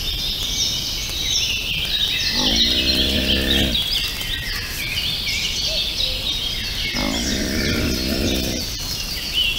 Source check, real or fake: real